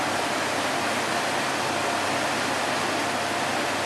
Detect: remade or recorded recorded